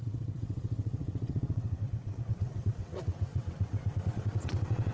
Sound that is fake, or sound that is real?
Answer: fake